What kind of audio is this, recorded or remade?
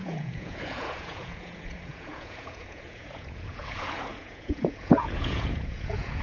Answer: remade